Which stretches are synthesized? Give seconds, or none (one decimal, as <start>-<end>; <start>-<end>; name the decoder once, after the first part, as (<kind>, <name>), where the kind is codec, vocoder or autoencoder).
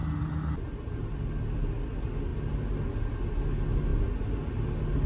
none